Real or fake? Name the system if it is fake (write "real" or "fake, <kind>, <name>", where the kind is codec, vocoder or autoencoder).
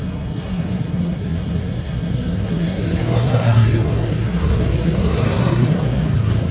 fake, codec, SNAC